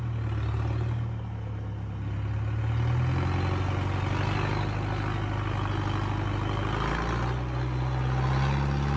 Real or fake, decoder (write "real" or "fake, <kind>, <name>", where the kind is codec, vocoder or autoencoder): real